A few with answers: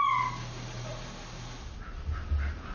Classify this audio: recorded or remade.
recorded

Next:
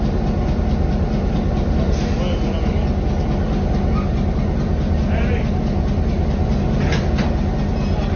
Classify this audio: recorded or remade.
recorded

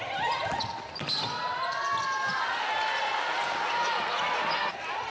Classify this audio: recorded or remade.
recorded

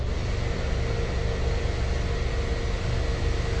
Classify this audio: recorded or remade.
recorded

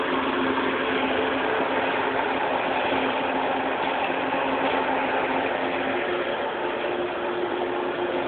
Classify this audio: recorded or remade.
recorded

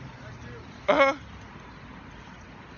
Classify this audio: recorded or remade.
recorded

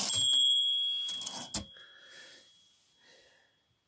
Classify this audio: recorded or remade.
recorded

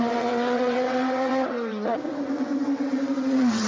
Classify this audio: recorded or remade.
remade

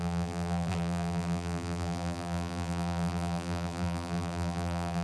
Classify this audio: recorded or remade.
remade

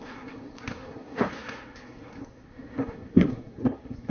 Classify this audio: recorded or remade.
remade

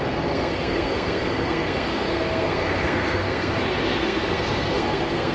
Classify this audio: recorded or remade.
remade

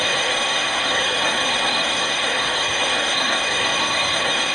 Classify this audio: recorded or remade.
remade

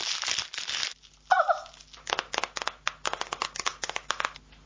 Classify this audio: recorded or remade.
recorded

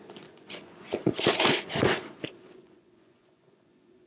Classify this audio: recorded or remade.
remade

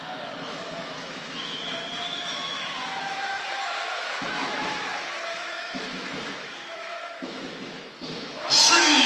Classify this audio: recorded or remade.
remade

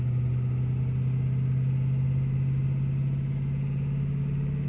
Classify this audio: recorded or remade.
recorded